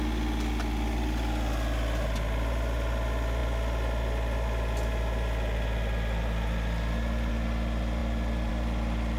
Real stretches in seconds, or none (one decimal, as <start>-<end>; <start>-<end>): 0.0-9.2